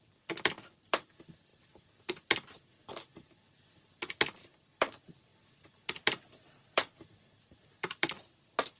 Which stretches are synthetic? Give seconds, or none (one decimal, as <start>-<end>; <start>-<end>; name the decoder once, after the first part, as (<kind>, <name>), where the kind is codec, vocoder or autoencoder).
0.0-1.5 (vocoder, BigVGAN v2); 2.9-8.8